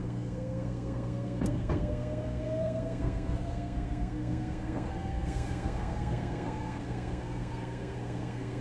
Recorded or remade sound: remade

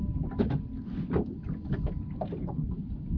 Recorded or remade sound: recorded